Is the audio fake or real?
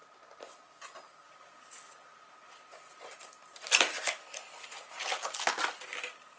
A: real